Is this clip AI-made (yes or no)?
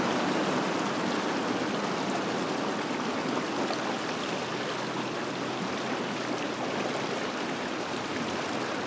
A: no